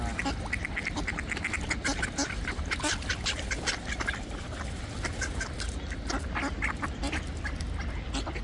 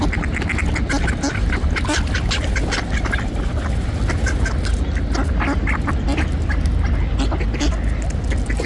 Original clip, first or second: second